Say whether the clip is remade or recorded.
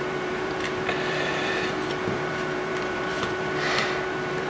remade